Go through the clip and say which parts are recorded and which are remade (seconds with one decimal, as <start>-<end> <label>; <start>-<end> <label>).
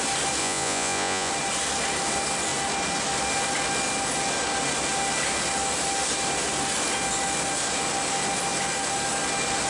0.0-0.4 recorded; 0.4-1.3 remade; 1.3-9.7 recorded